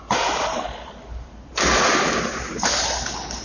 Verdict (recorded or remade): recorded